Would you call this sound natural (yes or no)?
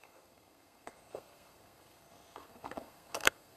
no